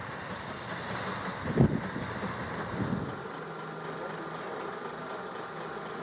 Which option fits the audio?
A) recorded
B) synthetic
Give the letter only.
A